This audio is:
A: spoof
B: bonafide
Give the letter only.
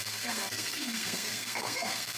A